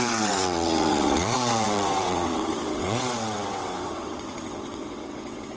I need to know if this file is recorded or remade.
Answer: remade